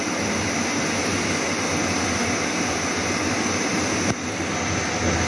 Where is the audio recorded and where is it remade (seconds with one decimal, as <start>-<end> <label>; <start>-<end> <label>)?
0.0-5.3 recorded